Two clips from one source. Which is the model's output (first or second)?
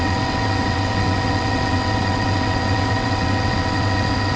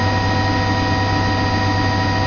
first